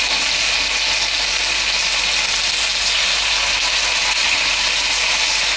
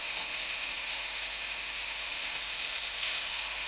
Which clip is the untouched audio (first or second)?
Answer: first